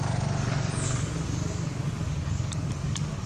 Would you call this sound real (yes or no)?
no